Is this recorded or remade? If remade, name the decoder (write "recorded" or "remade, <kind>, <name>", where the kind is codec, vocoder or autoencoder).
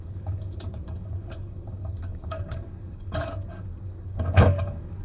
remade, codec, DAC